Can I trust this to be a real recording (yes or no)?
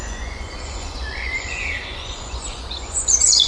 no